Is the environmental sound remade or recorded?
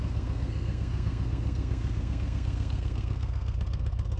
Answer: remade